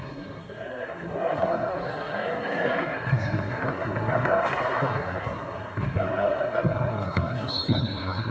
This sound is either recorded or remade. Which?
remade